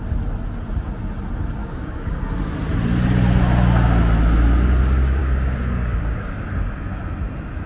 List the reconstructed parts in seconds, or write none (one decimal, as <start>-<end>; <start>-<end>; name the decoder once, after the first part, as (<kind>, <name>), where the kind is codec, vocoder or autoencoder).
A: 1.6-2.2 (codec, DAC); 5.2-6.4